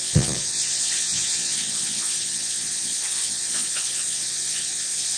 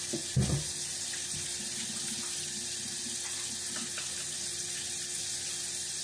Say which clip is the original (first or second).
second